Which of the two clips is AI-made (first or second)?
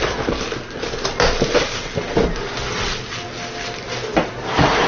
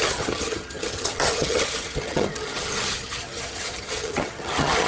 second